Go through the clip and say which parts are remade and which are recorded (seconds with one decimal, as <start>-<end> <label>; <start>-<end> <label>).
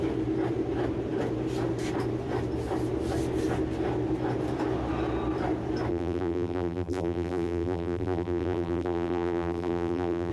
0.0-5.9 recorded; 5.9-10.3 remade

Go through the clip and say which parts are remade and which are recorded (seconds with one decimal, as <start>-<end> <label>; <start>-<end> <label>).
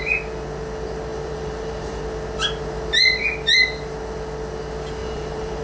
0.0-1.1 recorded; 1.1-2.0 remade; 2.0-5.0 recorded; 5.0-5.6 remade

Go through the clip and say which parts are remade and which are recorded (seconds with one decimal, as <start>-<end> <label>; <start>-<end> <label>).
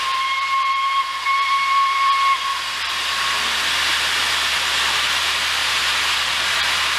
0.0-7.0 remade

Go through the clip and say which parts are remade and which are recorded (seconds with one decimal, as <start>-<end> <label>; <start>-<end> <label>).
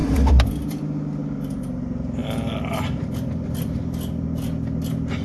0.0-0.8 remade; 0.8-2.2 recorded; 2.2-3.3 remade; 3.3-5.2 recorded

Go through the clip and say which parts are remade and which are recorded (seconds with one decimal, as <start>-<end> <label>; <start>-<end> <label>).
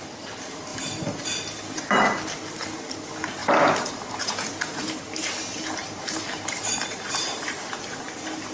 0.0-3.4 recorded; 3.4-4.3 remade; 4.3-5.8 recorded; 5.8-7.7 remade; 7.7-8.5 recorded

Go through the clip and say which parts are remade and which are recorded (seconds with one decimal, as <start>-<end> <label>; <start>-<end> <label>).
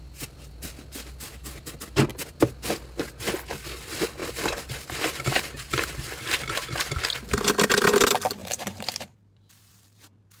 0.0-4.2 recorded; 4.2-6.9 remade; 6.9-8.4 recorded; 8.4-10.4 remade